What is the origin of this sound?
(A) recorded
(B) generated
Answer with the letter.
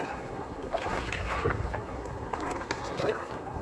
B